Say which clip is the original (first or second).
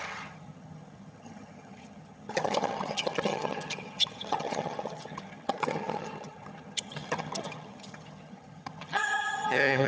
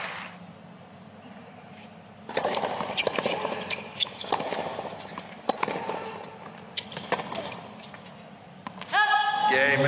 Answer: second